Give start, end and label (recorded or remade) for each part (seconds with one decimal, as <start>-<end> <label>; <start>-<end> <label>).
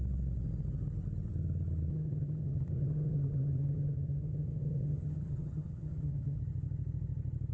0.0-1.9 recorded; 1.9-6.4 remade; 6.4-7.5 recorded